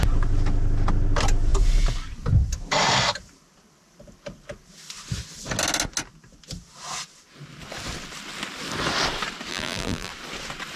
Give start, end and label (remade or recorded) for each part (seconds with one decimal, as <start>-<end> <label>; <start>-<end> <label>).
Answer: 0.0-9.5 recorded; 9.5-10.1 remade; 10.1-10.8 recorded